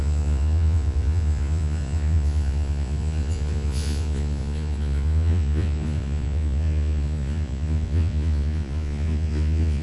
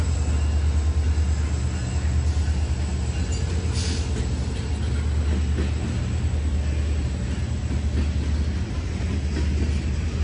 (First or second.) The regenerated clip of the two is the first